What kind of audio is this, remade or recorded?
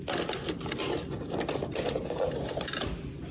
recorded